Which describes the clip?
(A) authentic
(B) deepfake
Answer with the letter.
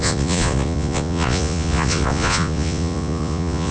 B